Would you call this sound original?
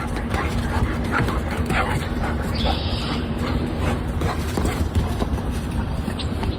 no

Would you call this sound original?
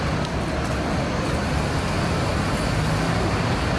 yes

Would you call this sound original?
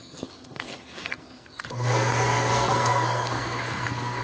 no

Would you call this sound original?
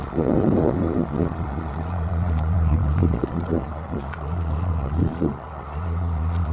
no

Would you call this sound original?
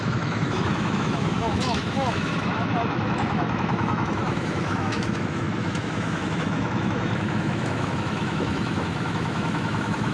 no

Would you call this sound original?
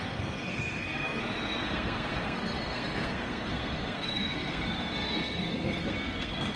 no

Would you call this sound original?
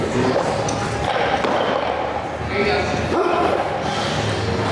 yes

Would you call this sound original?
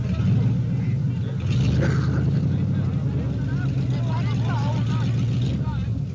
yes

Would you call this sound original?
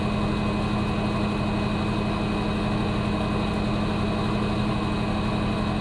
yes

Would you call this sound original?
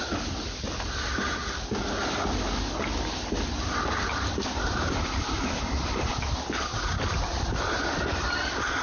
yes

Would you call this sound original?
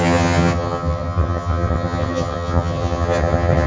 no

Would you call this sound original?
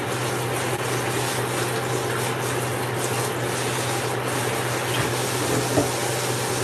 yes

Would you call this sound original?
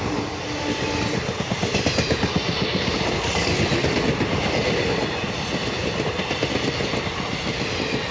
yes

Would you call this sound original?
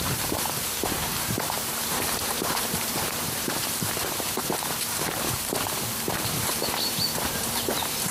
no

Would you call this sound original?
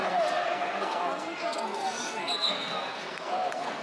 no